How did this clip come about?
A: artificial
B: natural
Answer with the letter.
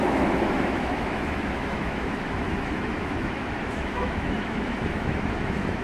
A